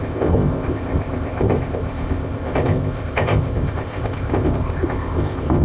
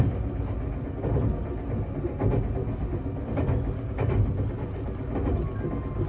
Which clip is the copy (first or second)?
first